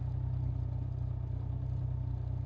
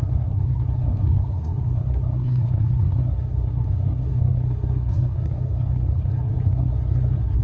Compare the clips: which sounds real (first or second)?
first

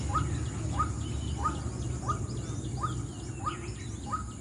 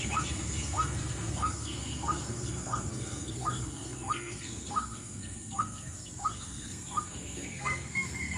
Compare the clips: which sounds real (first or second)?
first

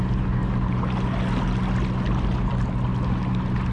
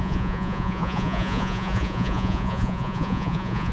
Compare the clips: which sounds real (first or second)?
first